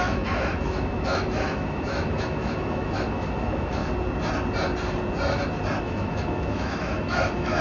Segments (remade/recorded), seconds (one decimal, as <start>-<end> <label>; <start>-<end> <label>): 0.0-3.8 remade; 3.8-5.8 recorded; 5.8-7.6 remade

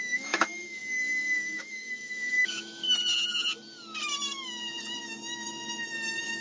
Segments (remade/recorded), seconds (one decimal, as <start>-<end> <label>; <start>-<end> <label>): 0.0-2.8 remade; 2.8-5.0 recorded; 5.0-6.4 remade